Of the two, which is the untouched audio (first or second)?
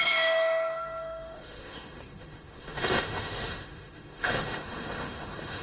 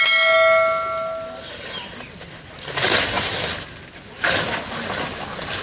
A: second